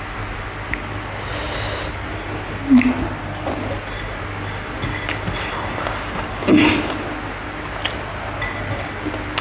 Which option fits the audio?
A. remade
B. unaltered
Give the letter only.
B